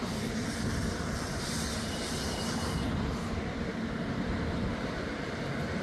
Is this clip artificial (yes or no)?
yes